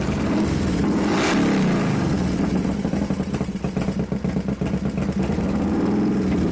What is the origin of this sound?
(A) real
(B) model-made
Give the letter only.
A